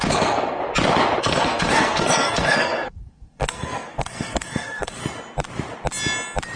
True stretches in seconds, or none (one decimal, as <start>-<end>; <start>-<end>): 0.6-1.2; 5.0-6.6

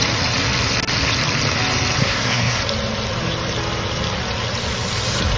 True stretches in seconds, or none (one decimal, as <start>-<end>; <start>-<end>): 0.0-2.0; 2.6-5.4

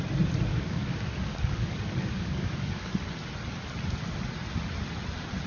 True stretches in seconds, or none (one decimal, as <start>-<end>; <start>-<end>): 0.0-0.5; 2.9-5.5